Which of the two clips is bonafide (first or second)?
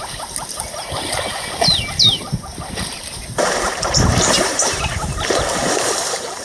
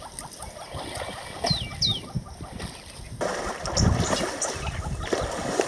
second